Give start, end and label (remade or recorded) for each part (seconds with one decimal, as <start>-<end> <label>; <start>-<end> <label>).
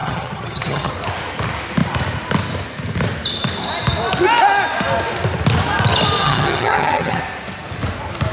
0.0-0.9 remade; 0.9-6.2 recorded; 6.2-7.2 remade; 7.2-8.3 recorded